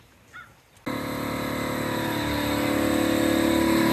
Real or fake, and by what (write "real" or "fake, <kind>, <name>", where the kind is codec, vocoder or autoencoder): real